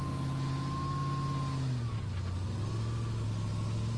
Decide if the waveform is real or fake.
real